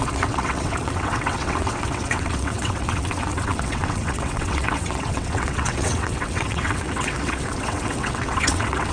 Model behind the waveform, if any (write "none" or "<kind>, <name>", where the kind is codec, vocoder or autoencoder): vocoder, WaveNeXt